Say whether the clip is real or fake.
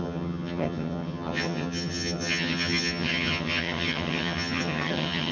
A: fake